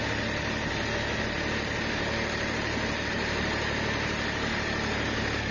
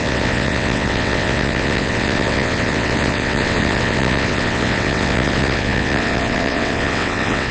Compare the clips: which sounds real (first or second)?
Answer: first